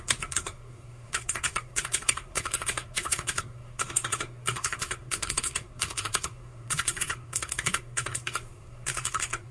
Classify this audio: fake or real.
fake